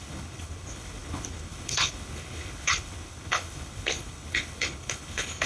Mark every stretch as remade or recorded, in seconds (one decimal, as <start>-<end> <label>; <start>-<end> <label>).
0.0-5.5 remade

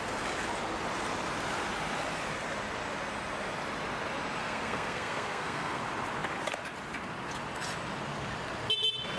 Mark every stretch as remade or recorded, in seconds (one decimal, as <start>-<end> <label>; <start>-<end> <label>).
0.0-4.4 recorded; 4.4-5.8 remade; 5.8-9.2 recorded

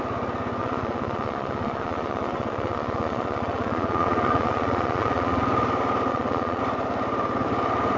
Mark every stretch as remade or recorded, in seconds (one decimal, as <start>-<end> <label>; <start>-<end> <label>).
0.0-0.6 recorded; 0.6-5.4 remade; 5.4-6.1 recorded; 6.1-6.6 remade; 6.6-8.0 recorded